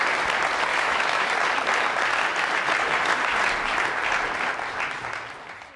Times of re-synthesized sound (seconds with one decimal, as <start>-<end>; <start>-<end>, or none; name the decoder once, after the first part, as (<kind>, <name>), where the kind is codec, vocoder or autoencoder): 0.7-1.3 (autoencoder, DAC-VAE)